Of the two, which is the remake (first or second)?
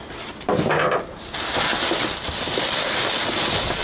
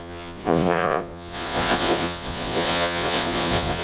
second